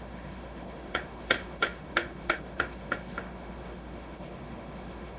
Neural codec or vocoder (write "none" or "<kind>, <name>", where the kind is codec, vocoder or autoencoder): autoencoder, DAC-VAE